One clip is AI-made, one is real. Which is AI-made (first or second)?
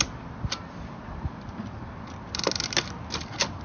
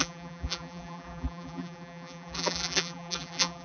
second